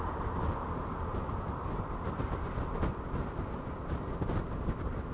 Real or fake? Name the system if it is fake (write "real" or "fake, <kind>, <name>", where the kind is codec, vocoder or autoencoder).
real